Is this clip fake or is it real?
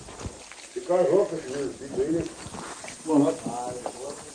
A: real